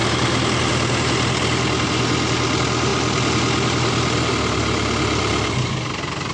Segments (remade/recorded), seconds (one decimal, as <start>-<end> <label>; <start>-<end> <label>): 0.0-6.3 recorded